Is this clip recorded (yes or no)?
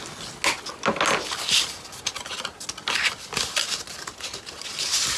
yes